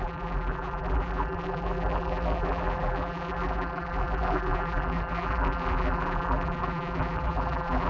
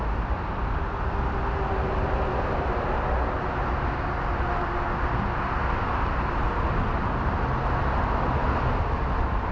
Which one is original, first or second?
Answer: second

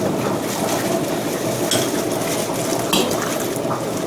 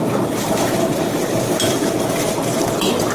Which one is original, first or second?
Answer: first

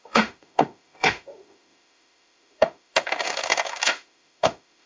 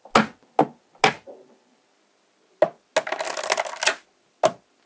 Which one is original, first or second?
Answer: second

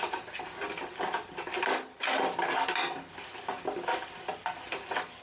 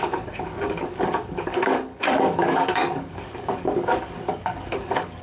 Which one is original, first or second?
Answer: first